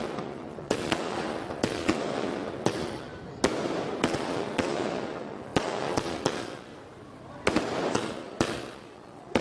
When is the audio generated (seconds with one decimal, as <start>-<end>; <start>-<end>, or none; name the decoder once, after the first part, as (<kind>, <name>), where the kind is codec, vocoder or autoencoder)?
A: 0.0-3.1 (vocoder, Vocos); 4.0-6.7; 7.9-9.4